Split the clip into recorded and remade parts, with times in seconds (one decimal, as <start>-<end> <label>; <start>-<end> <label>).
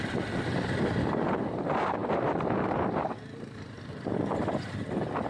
0.0-5.3 recorded